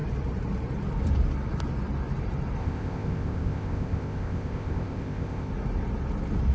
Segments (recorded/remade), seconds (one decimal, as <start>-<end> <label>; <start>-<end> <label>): 0.0-2.6 recorded; 2.6-5.5 remade; 5.5-6.5 recorded